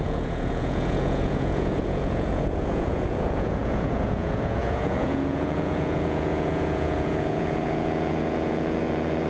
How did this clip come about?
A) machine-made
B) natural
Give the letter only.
A